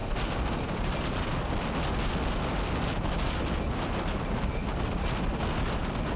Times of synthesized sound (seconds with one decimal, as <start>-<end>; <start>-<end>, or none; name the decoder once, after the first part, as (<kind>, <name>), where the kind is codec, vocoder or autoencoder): none